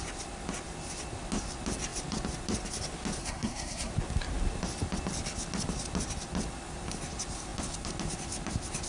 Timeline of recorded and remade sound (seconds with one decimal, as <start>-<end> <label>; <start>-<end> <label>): 0.0-3.2 recorded; 3.2-3.9 remade; 3.9-8.9 recorded